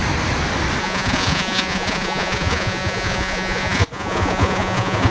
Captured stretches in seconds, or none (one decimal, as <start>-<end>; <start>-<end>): 0.0-0.8